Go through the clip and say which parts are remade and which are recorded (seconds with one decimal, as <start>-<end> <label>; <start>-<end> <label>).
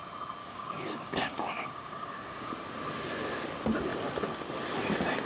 0.0-0.4 recorded; 0.4-2.5 remade; 2.5-5.3 recorded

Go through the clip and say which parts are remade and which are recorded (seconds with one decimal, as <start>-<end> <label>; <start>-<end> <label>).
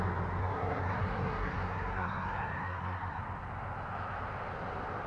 0.0-0.4 recorded; 0.4-3.2 remade; 3.2-5.1 recorded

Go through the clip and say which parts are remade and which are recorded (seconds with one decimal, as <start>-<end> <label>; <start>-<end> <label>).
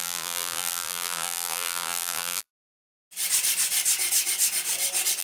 0.0-2.5 remade; 2.5-5.2 recorded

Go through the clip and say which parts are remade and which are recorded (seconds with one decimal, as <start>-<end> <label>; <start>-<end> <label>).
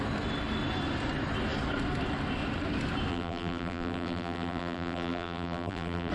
0.0-3.1 recorded; 3.1-6.1 remade